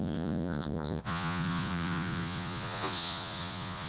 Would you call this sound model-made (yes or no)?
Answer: yes